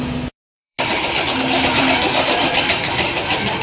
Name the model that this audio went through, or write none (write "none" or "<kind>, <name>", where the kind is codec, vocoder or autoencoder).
vocoder, BigVGAN v2